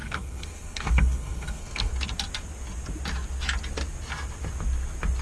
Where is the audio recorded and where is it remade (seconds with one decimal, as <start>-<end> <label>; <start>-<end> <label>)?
0.0-1.9 remade; 1.9-5.2 recorded